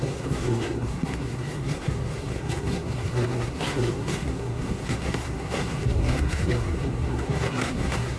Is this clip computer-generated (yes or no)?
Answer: yes